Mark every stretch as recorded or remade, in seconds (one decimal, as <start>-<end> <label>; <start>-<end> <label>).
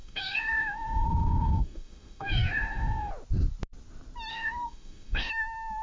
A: 0.0-3.1 remade; 3.1-4.3 recorded; 4.3-5.3 remade; 5.3-5.8 recorded